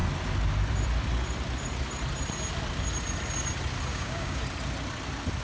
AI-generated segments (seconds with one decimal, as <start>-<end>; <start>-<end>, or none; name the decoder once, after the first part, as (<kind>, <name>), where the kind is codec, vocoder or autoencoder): 3.9-4.4 (codec, DAC)